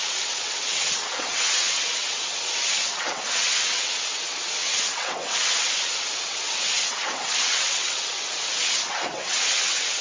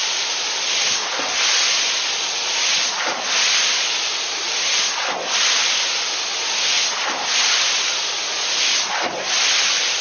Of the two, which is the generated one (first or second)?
first